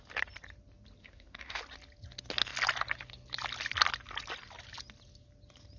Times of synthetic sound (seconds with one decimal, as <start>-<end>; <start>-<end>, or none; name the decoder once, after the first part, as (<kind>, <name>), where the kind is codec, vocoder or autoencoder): 1.0-1.6 (autoencoder, DAC-VAE)